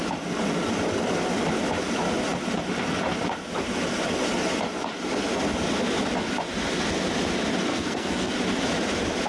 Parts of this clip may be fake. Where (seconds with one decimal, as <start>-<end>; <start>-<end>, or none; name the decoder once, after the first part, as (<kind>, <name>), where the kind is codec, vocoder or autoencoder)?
7.7-8.3 (codec, SNAC)